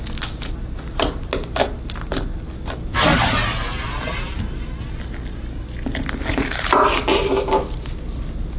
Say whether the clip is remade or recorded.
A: recorded